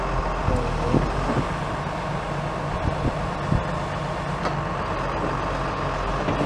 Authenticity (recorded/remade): recorded